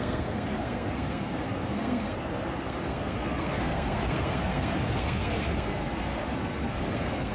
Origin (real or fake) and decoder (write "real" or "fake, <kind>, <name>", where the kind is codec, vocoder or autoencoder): fake, codec, SNAC